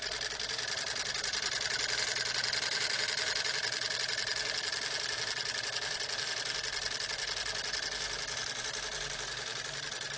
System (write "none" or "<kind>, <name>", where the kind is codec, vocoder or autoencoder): none